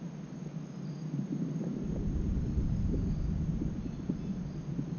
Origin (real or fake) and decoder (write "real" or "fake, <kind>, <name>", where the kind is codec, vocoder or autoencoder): real